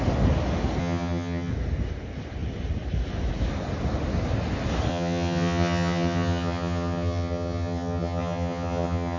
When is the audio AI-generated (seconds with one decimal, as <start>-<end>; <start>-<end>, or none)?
0.8-1.5; 4.9-9.2